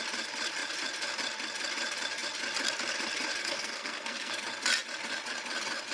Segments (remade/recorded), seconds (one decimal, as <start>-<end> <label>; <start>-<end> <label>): 0.0-3.4 recorded; 3.4-4.3 remade; 4.3-5.9 recorded